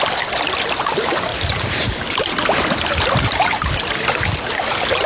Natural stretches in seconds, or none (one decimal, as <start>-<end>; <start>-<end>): 0.0-1.3; 4.4-5.1